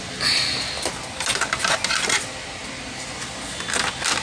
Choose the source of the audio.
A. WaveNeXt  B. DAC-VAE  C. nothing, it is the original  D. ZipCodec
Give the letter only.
C